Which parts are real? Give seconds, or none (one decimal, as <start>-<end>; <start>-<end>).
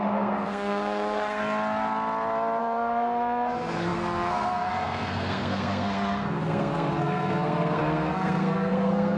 1.4-2.6